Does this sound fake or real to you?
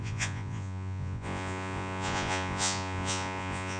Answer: fake